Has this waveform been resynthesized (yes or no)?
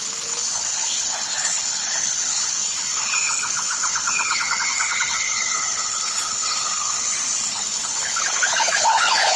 yes